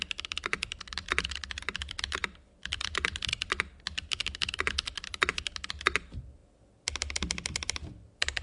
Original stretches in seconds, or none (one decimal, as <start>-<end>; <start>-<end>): 6.4-7.5